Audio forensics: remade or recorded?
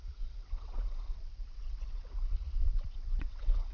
remade